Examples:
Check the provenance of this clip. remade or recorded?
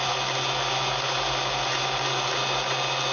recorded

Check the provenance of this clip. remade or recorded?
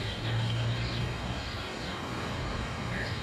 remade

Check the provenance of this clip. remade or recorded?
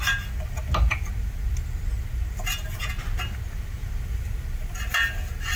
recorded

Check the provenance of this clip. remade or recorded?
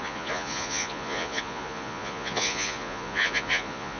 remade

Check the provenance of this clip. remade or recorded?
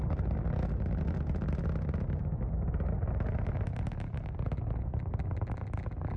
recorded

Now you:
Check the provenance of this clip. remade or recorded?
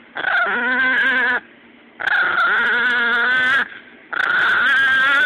recorded